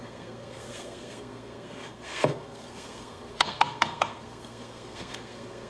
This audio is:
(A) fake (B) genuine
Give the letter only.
A